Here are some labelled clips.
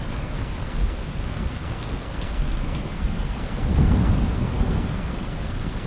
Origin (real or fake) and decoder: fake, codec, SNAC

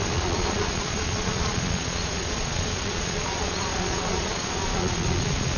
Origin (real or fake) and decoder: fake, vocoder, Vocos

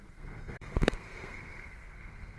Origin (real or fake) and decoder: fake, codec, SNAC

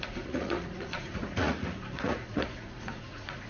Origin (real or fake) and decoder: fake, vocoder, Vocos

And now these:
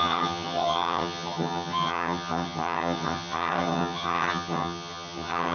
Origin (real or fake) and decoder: fake, vocoder, HiFi-GAN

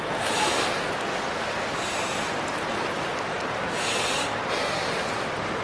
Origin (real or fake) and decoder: real